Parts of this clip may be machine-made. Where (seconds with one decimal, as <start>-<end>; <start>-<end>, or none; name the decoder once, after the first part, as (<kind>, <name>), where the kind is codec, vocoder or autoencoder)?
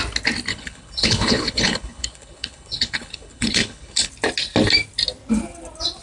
0.5-4.1 (codec, HILCodec)